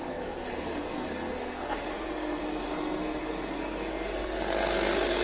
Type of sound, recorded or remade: remade